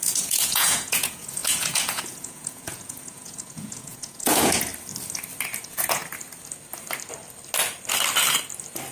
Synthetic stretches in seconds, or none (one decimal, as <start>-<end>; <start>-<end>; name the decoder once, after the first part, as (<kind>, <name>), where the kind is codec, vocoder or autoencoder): 0.0-4.7 (vocoder, Vocos); 5.6-6.0